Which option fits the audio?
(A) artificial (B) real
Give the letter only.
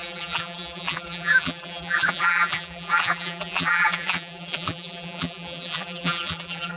A